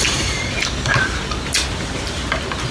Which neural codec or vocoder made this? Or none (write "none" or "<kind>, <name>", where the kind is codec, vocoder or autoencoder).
none